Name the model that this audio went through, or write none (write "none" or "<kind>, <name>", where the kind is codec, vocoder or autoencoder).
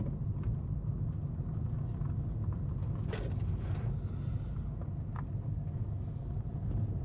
none